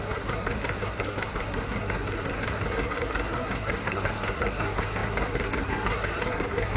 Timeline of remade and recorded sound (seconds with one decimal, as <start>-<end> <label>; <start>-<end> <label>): 0.0-6.8 remade